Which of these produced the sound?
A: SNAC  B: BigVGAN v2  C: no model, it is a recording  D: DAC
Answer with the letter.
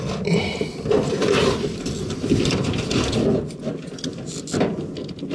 C